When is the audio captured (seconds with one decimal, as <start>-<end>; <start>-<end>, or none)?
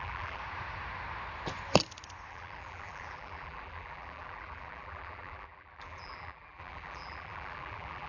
0.4-2.3